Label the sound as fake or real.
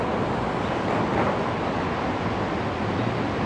real